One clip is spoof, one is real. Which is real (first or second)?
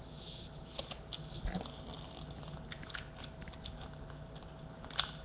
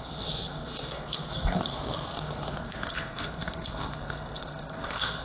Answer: first